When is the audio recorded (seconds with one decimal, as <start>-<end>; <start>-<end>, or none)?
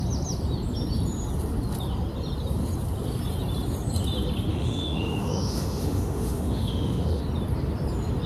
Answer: 0.0-4.5; 7.2-8.3